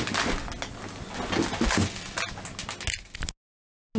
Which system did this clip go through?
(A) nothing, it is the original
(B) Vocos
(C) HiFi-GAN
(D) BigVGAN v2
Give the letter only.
A